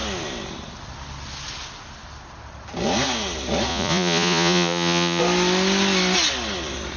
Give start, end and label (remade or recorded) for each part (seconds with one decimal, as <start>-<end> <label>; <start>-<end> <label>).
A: 0.0-3.7 recorded; 3.7-5.2 remade; 5.2-7.0 recorded